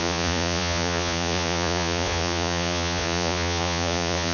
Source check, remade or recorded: remade